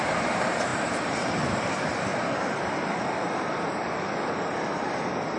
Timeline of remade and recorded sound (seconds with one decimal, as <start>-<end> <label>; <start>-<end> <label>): 0.0-2.1 remade; 2.1-5.4 recorded